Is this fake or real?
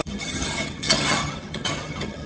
fake